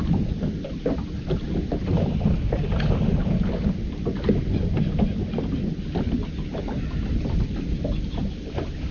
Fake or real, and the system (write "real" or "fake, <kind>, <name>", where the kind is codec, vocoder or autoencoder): real